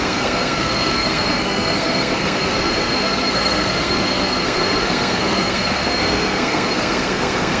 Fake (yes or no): yes